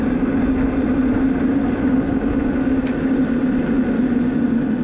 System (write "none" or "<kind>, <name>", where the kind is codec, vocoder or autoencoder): none